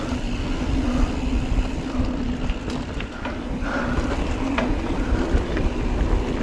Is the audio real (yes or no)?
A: yes